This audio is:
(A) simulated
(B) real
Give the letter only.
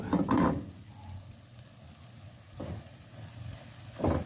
B